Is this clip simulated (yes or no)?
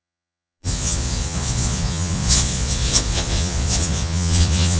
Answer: yes